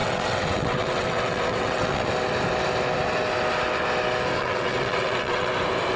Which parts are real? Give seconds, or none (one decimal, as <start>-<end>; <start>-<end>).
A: 2.1-4.4; 5.5-6.0